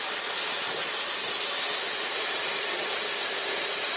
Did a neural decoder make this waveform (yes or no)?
no